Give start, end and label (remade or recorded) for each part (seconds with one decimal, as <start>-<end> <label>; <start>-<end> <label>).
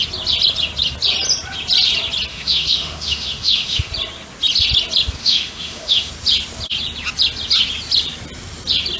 0.0-2.3 recorded; 2.3-3.9 remade; 3.9-5.2 recorded; 5.2-6.1 remade; 6.1-9.0 recorded